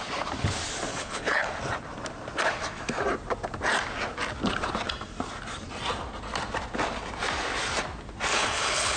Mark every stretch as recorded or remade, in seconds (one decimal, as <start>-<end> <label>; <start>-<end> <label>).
0.0-0.9 recorded; 0.9-1.5 remade; 1.5-8.3 recorded; 8.3-9.0 remade